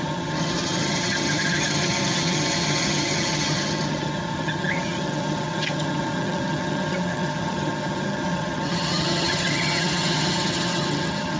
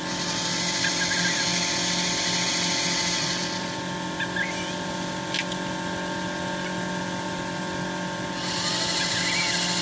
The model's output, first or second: first